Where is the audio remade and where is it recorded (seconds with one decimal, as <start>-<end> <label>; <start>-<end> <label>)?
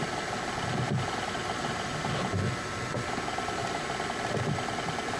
0.0-5.2 recorded